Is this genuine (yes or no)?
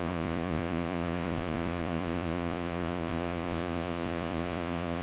no